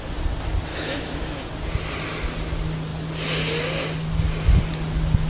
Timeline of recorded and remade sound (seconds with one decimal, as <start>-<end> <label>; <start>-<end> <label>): 0.0-0.7 recorded; 0.7-1.5 remade; 1.5-5.3 recorded